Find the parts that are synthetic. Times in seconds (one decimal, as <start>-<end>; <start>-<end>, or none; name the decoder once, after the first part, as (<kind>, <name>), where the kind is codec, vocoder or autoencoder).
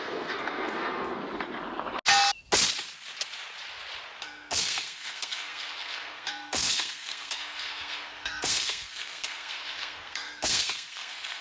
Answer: 0.0-1.2 (codec, SNAC); 4.2-11.4